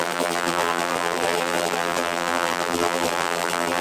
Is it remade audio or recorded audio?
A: remade